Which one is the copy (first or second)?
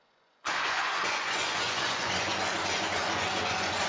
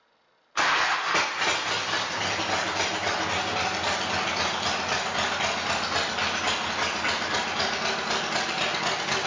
first